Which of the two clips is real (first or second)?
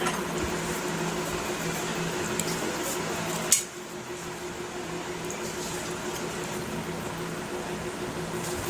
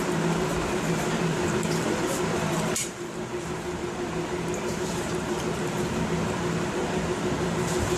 first